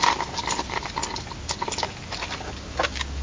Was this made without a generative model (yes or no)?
yes